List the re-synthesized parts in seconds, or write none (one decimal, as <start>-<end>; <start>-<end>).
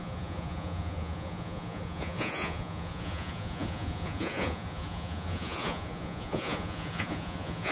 0.0-7.7